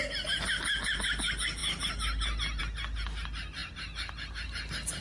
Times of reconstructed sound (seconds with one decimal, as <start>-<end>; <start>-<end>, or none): none